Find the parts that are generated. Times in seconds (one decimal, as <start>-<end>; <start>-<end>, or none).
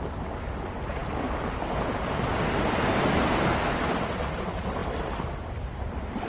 none